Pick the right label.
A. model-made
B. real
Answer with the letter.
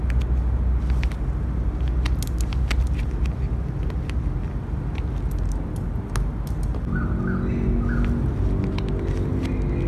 B